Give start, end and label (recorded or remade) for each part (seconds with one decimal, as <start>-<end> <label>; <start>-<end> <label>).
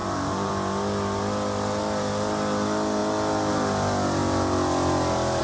0.0-0.5 remade; 0.5-5.4 recorded